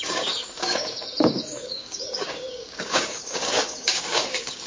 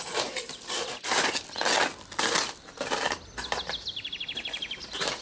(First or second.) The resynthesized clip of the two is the first